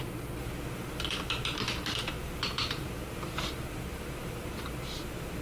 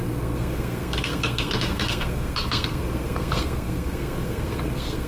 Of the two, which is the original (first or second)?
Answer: first